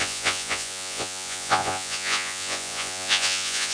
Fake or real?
fake